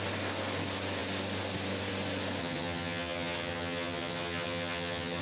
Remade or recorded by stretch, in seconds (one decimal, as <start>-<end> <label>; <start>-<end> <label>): 0.0-2.4 recorded; 2.4-5.2 remade